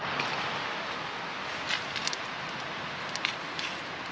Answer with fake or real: real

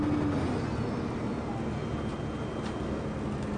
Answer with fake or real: real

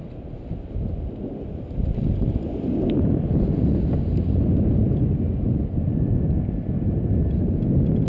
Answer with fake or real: real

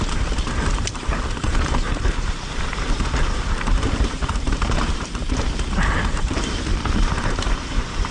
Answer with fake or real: fake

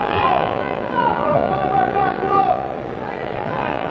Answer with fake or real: fake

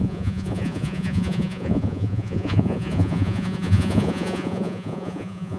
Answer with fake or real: fake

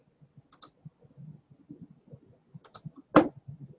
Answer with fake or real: real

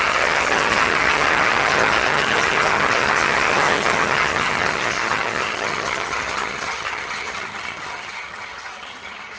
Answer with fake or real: fake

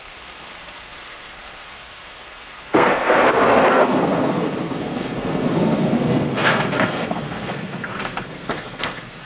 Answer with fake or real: fake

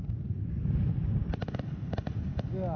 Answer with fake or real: real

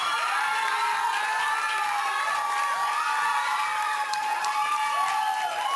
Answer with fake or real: real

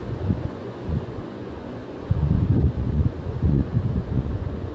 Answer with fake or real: fake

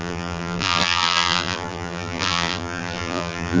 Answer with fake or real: fake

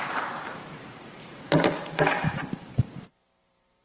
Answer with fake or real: fake